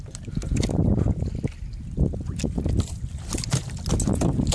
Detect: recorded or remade recorded